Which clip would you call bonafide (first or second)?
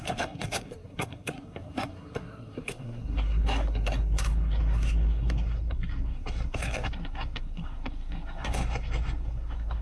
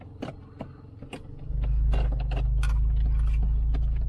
second